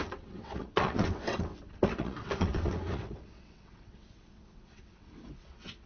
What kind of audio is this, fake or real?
fake